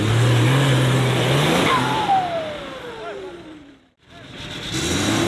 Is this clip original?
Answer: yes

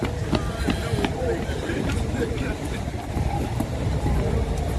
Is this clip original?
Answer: yes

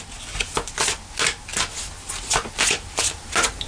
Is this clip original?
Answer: yes